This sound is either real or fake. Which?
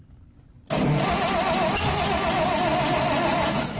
real